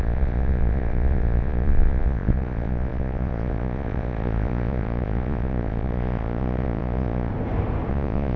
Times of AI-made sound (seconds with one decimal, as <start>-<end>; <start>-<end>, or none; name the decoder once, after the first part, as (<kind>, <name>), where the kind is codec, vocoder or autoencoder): 0.0-7.3 (vocoder, Vocos); 7.9-8.4